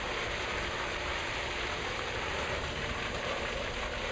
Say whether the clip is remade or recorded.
remade